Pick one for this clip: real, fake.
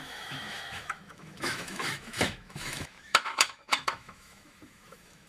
fake